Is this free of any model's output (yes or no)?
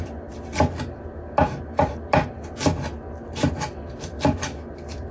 yes